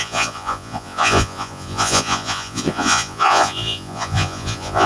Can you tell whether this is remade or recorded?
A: remade